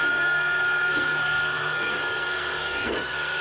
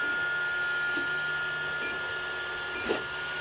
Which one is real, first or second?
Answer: second